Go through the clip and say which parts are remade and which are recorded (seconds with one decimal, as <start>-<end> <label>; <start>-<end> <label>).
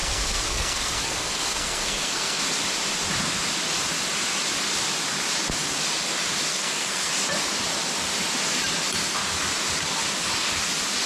0.0-2.4 remade; 2.4-6.5 recorded; 6.5-7.1 remade; 7.1-11.1 recorded